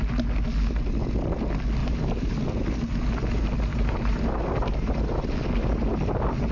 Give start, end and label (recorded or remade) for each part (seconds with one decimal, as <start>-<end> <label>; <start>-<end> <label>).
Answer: 0.0-1.8 recorded; 1.8-2.5 remade; 2.5-3.7 recorded; 3.7-5.3 remade; 5.3-6.5 recorded